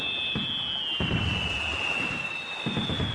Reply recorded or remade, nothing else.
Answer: recorded